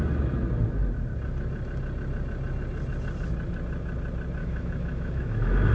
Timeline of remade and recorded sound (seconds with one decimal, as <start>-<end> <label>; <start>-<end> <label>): 0.0-4.4 recorded; 4.4-5.7 remade